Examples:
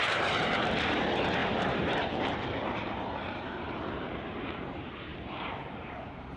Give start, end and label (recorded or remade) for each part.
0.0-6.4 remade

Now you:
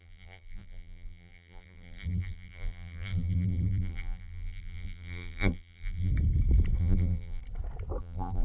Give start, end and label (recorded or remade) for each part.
0.0-6.1 remade; 6.1-6.8 recorded; 6.8-7.4 remade; 7.4-8.0 recorded; 8.0-8.4 remade